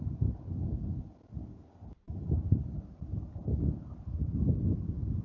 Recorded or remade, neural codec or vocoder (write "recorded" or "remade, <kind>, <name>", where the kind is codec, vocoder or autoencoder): recorded